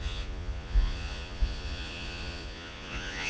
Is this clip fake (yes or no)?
yes